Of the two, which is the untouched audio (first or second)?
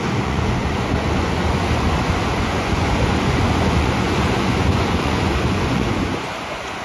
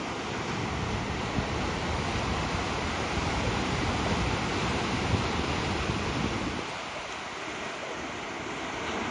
second